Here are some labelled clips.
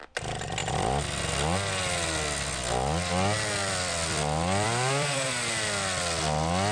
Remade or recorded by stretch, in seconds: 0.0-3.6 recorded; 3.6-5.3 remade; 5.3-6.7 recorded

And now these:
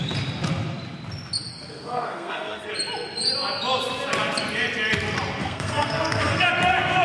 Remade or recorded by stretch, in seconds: 0.0-1.5 recorded; 1.5-2.7 remade; 2.7-5.4 recorded; 5.4-6.5 remade; 6.5-7.0 recorded

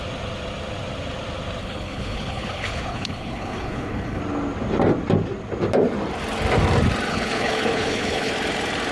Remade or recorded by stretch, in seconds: 0.0-1.6 recorded; 1.6-4.2 remade; 4.2-7.1 recorded; 7.1-8.3 remade; 8.3-8.9 recorded

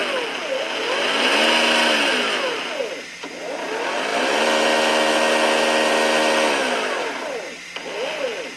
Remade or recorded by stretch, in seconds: 0.0-8.6 recorded

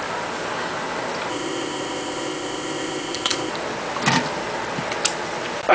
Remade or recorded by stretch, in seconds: 0.0-1.3 recorded; 1.3-3.5 remade; 3.5-5.7 recorded